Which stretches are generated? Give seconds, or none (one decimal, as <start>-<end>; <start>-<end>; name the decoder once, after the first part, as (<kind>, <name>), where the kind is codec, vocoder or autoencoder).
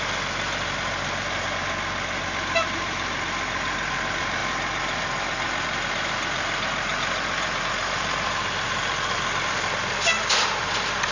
none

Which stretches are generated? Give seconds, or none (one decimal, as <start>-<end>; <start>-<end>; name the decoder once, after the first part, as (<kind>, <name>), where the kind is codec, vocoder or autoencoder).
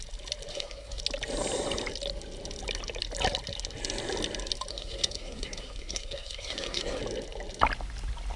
0.5-1.0 (codec, SNAC); 4.7-7.0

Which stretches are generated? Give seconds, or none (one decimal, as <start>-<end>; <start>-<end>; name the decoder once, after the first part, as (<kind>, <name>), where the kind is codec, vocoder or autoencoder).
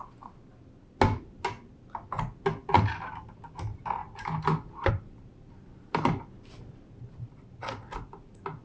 none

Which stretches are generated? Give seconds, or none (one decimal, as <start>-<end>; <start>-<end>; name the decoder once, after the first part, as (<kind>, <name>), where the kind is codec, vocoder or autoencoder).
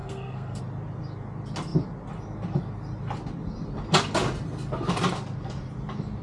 0.0-0.6 (codec, SNAC)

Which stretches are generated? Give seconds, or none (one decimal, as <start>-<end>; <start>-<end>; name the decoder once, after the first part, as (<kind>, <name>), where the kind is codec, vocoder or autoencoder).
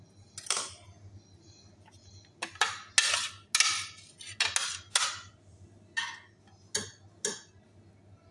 none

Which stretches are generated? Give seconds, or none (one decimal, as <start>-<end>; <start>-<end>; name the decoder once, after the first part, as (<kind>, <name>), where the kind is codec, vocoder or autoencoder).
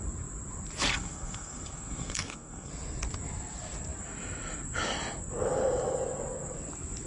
0.9-2.7 (codec, SNAC)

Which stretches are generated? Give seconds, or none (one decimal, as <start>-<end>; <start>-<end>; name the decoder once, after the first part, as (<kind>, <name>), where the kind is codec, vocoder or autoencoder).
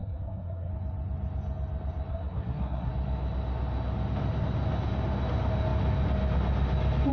0.0-0.7 (codec, SNAC); 2.1-2.9